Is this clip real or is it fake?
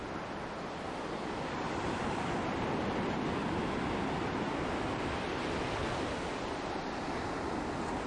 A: real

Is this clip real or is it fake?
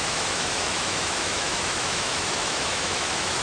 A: fake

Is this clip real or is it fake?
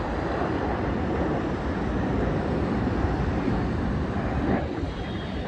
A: fake